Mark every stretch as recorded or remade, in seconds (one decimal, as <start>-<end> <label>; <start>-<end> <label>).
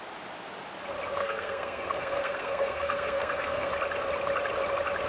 0.0-1.2 recorded; 1.2-3.7 remade; 3.7-5.1 recorded